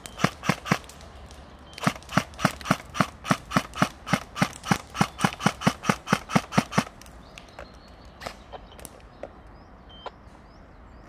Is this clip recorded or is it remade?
recorded